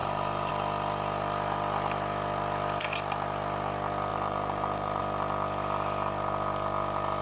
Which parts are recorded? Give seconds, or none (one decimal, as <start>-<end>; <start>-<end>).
0.5-4.1; 5.0-7.2